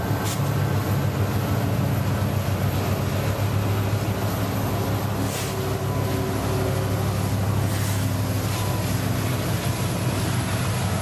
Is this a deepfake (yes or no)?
no